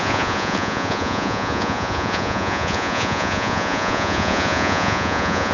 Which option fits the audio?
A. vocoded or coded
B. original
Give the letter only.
A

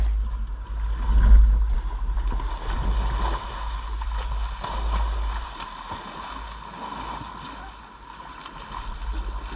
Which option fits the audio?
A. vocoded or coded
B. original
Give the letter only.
B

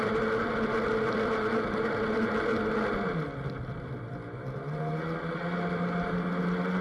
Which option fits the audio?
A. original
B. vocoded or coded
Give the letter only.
A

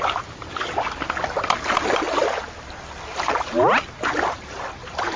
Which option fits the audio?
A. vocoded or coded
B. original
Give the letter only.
B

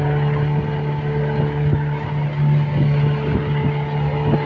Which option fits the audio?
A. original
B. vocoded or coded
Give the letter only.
A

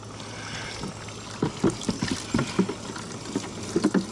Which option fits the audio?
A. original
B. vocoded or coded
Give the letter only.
A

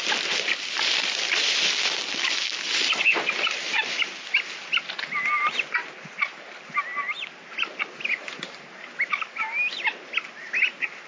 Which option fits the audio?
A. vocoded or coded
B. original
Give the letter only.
B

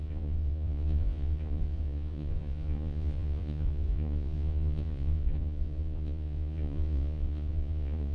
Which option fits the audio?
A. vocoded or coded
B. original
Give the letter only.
A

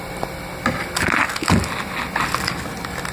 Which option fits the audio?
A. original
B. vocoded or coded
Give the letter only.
A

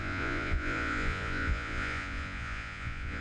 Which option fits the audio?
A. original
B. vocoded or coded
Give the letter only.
B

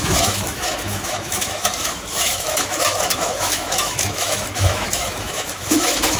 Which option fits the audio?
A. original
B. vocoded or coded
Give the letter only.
B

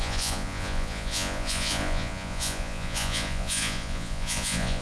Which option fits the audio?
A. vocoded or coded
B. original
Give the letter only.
A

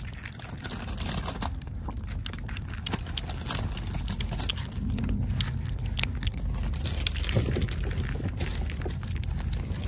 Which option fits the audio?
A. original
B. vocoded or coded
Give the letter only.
A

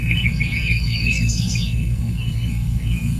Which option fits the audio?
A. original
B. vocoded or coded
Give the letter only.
B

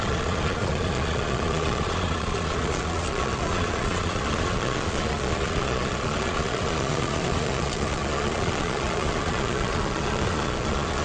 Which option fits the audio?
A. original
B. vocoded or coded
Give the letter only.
B